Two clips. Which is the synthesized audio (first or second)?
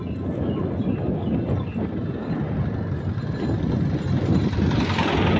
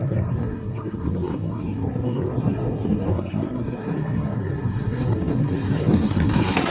second